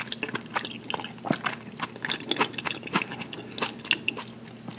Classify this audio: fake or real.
real